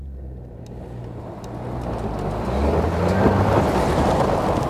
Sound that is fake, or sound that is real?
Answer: real